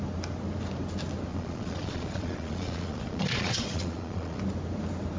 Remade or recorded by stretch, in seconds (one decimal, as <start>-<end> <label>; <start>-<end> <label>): 0.0-1.3 recorded; 1.3-4.4 remade; 4.4-5.2 recorded